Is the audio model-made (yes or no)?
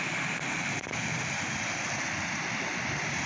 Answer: no